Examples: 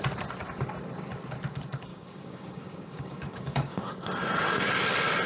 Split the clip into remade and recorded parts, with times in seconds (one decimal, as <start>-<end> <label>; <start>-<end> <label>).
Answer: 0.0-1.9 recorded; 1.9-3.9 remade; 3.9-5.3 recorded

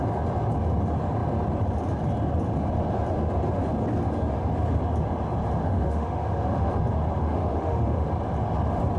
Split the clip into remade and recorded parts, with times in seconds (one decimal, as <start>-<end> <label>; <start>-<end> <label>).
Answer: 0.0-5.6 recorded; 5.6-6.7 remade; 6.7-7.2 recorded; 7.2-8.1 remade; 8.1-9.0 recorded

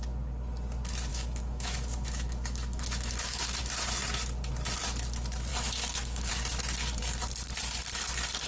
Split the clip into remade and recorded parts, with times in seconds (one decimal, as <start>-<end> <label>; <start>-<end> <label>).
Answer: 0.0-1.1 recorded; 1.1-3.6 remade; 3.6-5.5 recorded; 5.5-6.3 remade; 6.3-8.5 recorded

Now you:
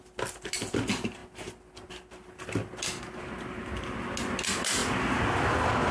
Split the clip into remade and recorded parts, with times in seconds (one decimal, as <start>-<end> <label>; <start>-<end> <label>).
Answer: 0.0-5.9 recorded

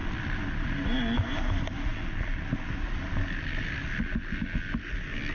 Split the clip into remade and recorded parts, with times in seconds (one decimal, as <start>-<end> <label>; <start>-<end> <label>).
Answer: 0.0-5.3 recorded